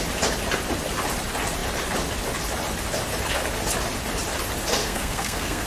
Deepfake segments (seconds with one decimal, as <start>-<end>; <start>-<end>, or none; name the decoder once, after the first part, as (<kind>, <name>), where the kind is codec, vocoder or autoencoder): 4.8-5.7 (codec, SNAC)